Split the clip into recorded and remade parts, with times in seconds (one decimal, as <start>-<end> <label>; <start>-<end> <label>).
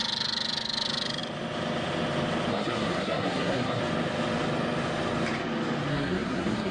0.0-2.5 recorded; 2.5-3.8 remade; 3.8-5.9 recorded; 5.9-6.7 remade